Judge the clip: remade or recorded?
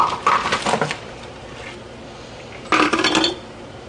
recorded